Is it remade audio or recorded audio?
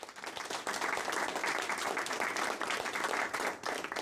recorded